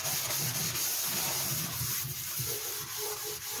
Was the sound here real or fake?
real